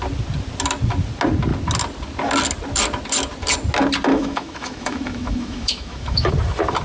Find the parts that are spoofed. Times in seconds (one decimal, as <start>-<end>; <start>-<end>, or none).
4.1-6.3